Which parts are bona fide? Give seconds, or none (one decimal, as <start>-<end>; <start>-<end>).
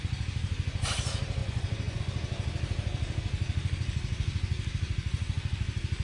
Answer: 0.0-1.4; 2.0-6.0